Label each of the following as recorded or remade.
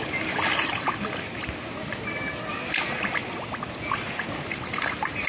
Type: recorded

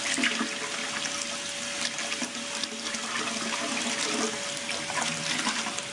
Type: recorded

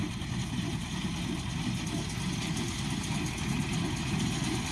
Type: recorded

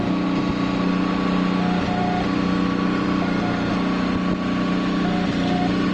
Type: recorded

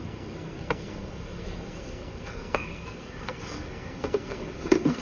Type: remade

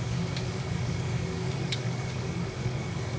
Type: remade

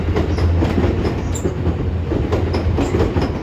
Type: recorded